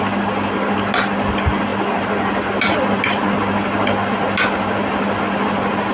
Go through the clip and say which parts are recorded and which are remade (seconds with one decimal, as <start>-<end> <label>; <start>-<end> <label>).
0.0-5.9 recorded